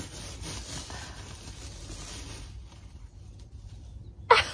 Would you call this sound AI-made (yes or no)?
no